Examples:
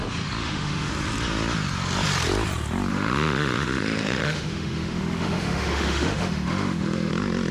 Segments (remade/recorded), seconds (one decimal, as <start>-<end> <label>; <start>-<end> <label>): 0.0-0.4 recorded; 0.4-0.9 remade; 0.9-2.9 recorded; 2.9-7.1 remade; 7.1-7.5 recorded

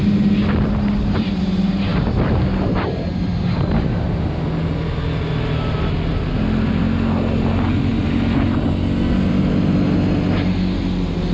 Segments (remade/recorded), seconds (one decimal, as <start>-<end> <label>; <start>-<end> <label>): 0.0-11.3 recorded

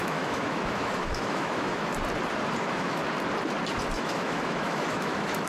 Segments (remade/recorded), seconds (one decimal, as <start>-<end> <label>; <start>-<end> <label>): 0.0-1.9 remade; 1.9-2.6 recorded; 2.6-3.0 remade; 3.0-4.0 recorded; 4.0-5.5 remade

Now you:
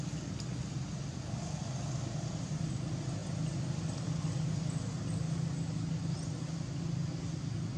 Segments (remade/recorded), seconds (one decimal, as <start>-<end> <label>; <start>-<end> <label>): 0.0-7.8 recorded